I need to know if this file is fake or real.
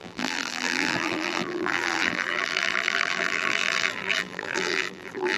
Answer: fake